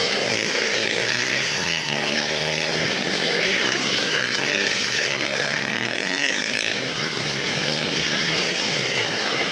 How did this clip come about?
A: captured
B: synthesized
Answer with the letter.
B